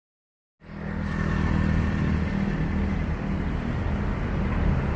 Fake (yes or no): no